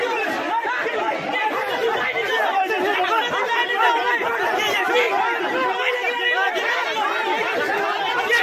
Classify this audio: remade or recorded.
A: recorded